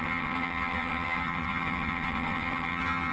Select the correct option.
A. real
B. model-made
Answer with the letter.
B